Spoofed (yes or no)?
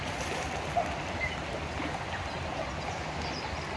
no